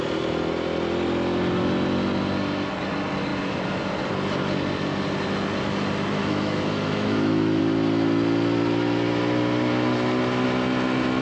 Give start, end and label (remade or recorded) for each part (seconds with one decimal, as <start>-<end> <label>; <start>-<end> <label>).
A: 0.0-6.2 recorded; 6.2-7.6 remade; 7.6-11.2 recorded